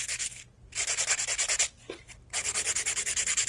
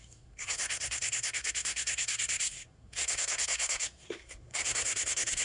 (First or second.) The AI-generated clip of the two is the second